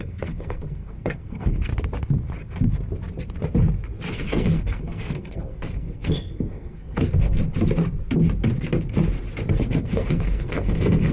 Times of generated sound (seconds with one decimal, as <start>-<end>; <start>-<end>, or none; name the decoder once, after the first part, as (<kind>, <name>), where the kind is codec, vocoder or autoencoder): 0.0-1.7 (codec, SNAC); 4.1-7.4; 9.5-11.1